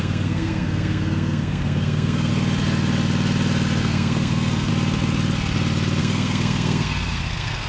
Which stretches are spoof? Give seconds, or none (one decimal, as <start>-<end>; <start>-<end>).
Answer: 0.0-2.3; 3.8-4.7; 6.0-7.7